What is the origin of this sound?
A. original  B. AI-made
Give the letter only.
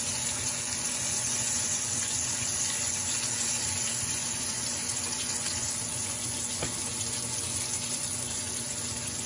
B